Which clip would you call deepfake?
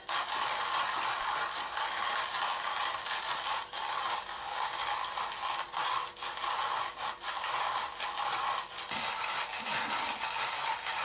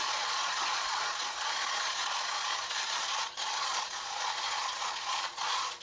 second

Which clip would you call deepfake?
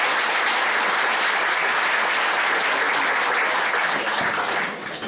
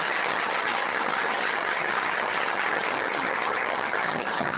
second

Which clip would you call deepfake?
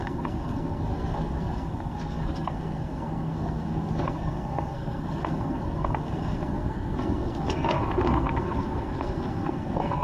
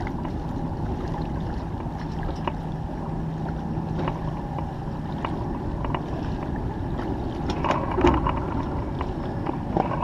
first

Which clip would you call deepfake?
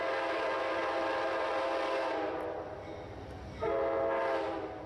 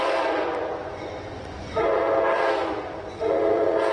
second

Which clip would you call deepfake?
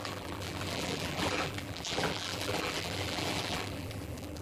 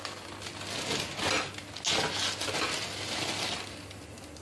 first